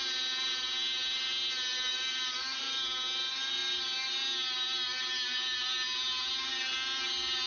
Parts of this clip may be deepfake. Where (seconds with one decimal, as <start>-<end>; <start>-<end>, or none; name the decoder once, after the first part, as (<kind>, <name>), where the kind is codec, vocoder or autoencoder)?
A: 1.9-2.6 (vocoder, BigVGAN v2)

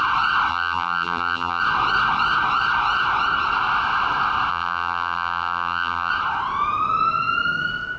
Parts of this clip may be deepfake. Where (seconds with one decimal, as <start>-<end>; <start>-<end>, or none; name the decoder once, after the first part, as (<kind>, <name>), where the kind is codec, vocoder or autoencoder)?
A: 0.5-1.6 (vocoder, BigVGAN v2); 4.5-6.1

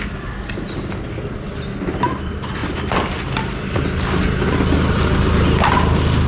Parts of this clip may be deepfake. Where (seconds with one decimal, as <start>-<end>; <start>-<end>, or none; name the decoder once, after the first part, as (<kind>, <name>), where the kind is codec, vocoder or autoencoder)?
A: none

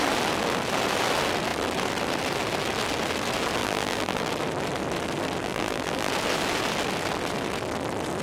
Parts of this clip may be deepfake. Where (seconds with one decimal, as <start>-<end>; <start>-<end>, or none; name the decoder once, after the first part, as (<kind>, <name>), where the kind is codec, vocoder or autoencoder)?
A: 3.6-4.3 (vocoder, BigVGAN v2); 5.4-6.1

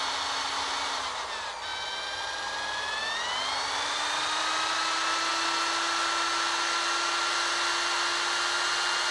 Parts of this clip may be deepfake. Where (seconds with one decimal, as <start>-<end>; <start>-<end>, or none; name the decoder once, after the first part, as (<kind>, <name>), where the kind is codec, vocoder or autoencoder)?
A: none

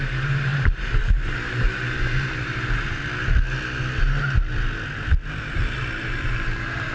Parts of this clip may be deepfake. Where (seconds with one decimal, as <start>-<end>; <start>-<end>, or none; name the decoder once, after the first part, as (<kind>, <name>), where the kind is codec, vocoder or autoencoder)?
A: 0.0-3.0 (vocoder, BigVGAN v2); 5.3-6.9

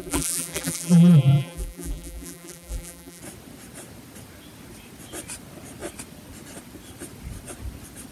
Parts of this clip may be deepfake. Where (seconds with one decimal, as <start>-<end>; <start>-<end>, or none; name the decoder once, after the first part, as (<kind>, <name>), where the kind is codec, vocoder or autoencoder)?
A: 0.0-3.2 (vocoder, BigVGAN v2)

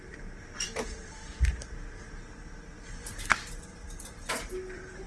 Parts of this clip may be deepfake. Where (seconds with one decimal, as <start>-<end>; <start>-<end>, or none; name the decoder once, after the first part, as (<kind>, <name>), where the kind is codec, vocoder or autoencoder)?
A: 0.0-1.2 (vocoder, BigVGAN v2); 4.3-5.1